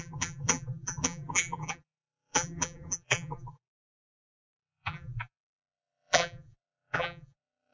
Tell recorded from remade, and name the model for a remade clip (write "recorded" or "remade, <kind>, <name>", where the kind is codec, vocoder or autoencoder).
remade, vocoder, BigVGAN v2